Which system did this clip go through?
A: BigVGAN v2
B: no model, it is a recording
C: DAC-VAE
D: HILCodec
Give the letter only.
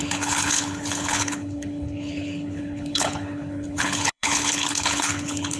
D